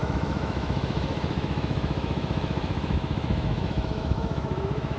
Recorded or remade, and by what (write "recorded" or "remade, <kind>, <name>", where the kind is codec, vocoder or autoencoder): remade, autoencoder, DAC-VAE